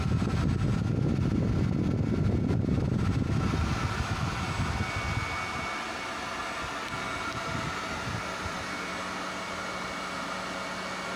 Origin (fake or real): real